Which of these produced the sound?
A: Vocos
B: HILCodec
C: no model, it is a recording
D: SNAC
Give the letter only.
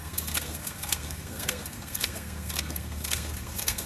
D